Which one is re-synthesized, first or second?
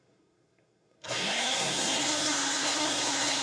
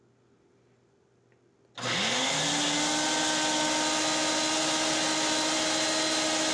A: first